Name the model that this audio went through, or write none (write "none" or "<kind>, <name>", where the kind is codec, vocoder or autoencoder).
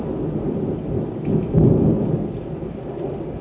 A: none